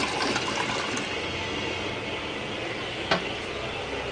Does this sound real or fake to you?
real